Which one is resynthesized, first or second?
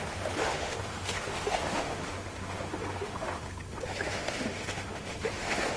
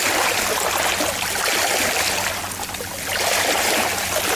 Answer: first